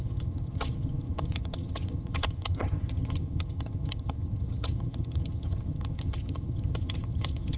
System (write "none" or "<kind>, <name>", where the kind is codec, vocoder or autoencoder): vocoder, HiFi-GAN